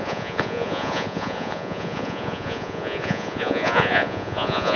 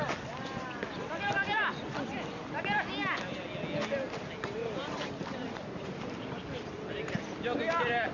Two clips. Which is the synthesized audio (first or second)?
first